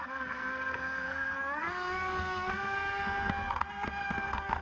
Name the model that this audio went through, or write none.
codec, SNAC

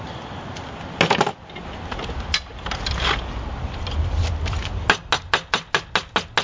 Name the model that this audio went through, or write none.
none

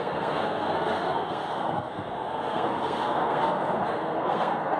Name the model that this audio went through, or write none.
codec, SNAC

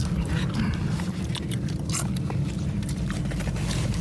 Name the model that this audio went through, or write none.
none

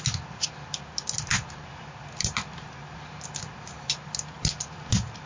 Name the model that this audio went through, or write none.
none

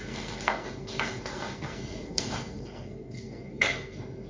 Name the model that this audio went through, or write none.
codec, SNAC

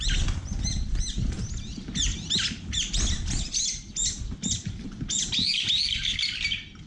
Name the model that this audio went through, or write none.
none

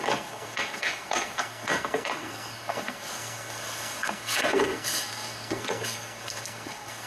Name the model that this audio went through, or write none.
codec, SNAC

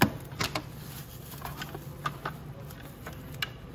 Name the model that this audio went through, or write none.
none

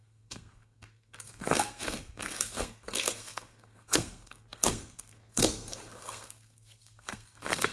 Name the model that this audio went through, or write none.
codec, SNAC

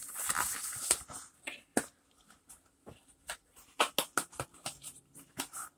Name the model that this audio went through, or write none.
none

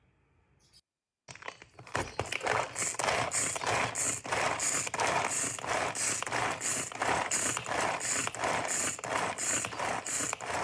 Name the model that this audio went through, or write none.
none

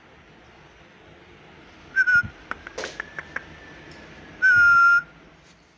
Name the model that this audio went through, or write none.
none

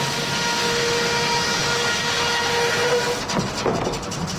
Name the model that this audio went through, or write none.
none